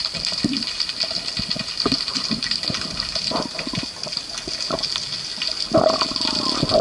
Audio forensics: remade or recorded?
recorded